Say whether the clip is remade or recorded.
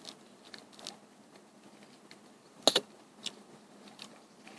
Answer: recorded